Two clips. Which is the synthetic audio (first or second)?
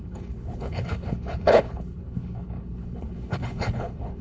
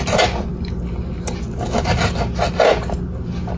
first